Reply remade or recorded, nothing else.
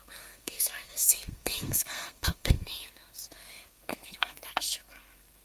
remade